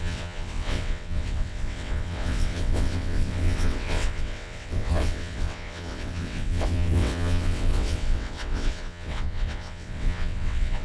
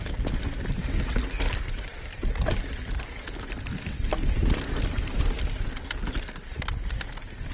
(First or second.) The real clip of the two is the second